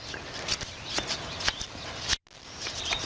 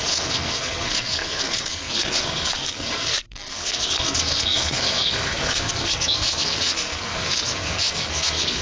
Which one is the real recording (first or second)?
first